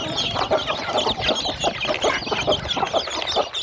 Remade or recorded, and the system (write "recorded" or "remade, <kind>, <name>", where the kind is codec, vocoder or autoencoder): recorded